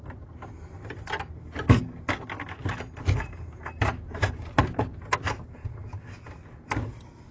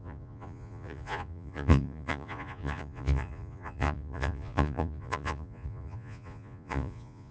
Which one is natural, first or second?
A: first